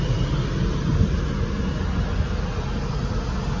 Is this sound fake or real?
real